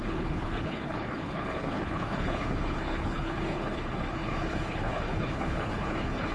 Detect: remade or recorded remade